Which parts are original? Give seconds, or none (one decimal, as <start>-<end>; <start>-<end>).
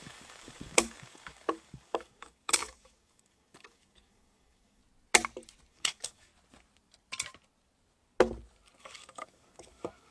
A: 4.8-5.7; 6.3-8.8